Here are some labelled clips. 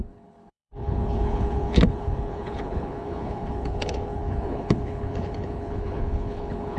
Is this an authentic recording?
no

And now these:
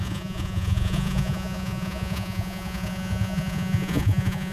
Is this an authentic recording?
no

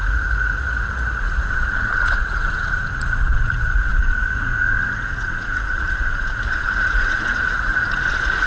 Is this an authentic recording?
no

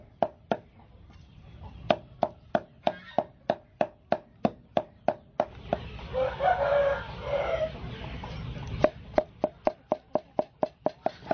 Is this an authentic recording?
yes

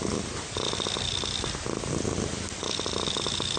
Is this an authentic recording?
yes